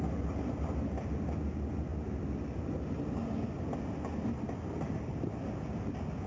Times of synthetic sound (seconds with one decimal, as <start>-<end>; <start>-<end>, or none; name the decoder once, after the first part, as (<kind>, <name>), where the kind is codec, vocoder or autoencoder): none